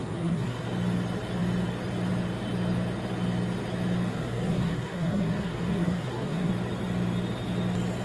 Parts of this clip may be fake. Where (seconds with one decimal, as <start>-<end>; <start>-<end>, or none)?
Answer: 0.0-0.7; 4.1-6.5